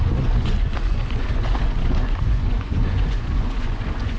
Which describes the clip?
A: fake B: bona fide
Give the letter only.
A